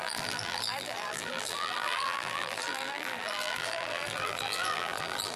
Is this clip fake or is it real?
fake